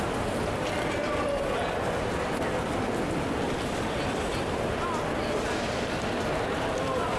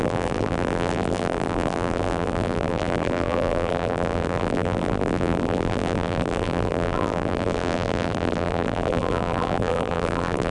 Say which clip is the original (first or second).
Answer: first